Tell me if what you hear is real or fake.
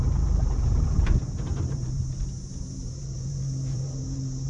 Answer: fake